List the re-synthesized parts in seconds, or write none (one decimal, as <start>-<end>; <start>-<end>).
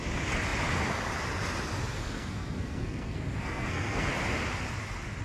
2.0-4.1